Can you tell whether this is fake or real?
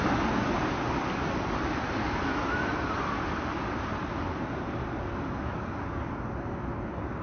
real